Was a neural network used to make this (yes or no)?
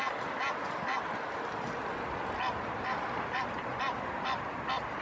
no